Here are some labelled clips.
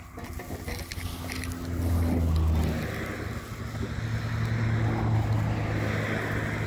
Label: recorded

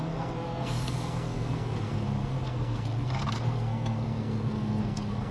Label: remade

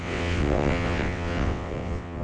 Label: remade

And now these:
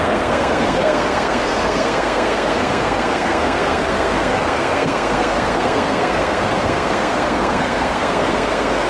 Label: remade